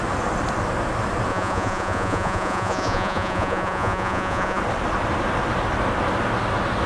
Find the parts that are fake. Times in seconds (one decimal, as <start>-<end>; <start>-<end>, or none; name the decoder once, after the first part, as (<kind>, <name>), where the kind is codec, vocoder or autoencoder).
1.3-4.6 (vocoder, Vocos)